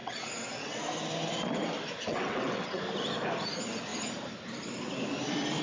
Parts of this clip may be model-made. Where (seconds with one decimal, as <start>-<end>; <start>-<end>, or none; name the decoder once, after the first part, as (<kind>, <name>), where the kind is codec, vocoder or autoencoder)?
0.0-0.8 (vocoder, WaveNeXt); 2.1-2.8